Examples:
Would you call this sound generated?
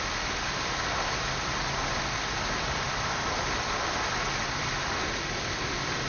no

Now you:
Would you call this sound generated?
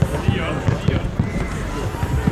no